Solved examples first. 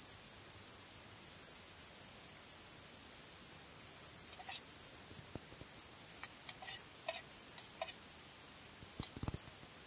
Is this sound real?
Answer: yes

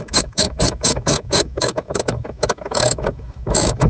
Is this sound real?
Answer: no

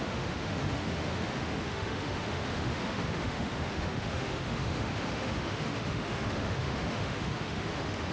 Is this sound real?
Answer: no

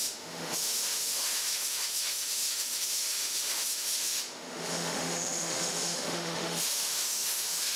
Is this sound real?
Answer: no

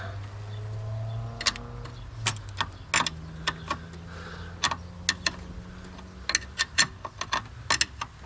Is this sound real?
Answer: yes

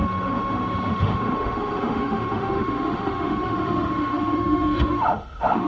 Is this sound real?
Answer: no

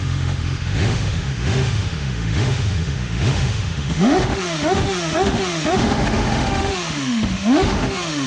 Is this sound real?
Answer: no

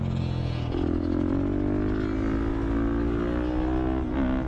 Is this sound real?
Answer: yes